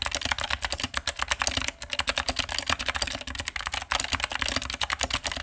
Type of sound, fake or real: real